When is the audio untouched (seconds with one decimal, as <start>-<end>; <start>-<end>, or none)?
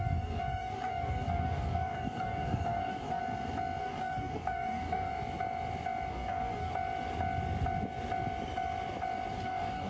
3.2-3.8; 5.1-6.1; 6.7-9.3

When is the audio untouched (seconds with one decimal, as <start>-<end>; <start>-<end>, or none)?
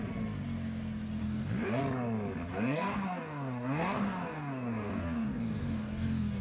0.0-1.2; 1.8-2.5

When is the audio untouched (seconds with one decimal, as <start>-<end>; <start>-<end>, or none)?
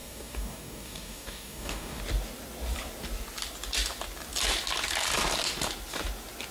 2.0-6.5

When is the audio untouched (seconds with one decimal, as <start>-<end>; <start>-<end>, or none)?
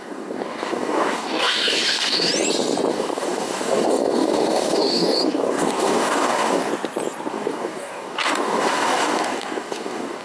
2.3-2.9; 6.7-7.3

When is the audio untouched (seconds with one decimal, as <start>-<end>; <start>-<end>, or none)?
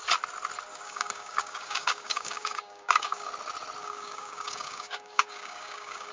0.0-0.7; 3.3-3.8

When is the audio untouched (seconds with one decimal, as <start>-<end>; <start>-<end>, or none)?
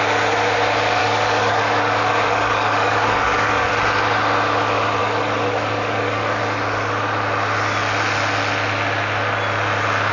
0.0-1.0; 3.7-5.0; 6.4-10.1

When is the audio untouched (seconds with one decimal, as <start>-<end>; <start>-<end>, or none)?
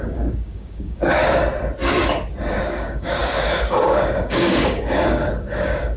1.4-2.5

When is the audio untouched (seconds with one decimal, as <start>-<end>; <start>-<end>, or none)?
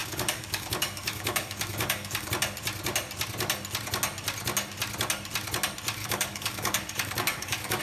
2.3-6.0